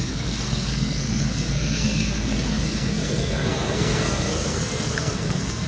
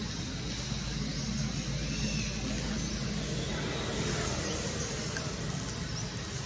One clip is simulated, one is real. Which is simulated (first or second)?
first